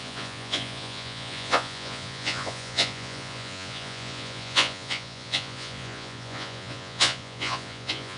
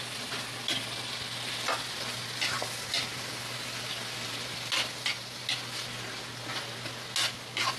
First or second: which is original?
second